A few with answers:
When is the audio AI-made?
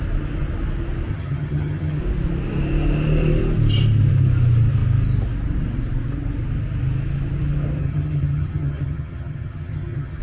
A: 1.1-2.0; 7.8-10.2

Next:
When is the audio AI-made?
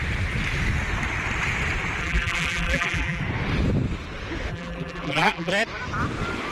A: 2.0-3.2; 4.5-5.5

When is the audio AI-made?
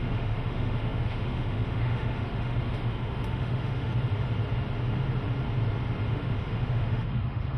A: 0.0-3.9; 6.1-7.6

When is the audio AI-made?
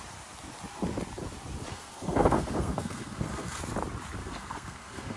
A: 1.7-3.6; 4.2-5.2